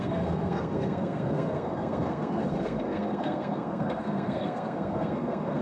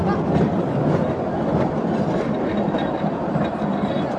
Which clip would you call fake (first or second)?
first